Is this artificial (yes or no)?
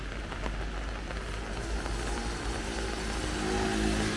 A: no